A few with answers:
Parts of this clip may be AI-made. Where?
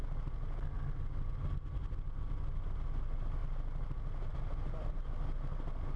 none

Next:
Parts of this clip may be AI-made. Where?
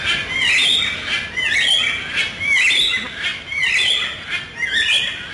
3.3-4.3 (vocoder, BigVGAN v2)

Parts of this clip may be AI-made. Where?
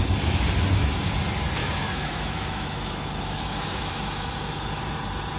1.6-4.8 (autoencoder, DAC-VAE)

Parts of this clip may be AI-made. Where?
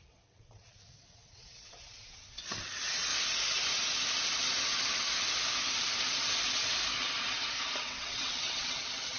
0.0-3.1 (vocoder, WaveNeXt); 7.8-9.2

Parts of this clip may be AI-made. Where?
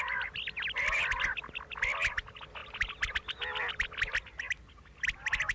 none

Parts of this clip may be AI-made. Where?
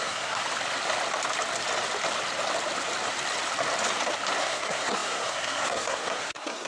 0.0-0.4 (codec, SNAC); 4.4-6.7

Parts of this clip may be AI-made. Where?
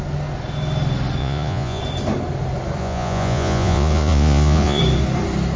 1.2-1.8 (vocoder, Vocos); 2.8-4.8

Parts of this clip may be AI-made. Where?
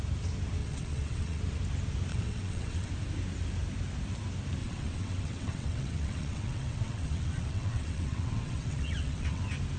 0.6-1.4 (vocoder, WaveNeXt); 2.1-2.9; 4.6-9.4